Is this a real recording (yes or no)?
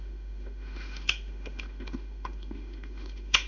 no